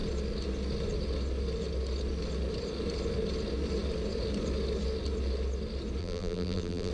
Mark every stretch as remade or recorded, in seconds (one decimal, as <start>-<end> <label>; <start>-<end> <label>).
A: 0.0-6.0 recorded; 6.0-6.9 remade